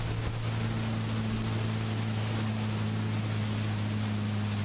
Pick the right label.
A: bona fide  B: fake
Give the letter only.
A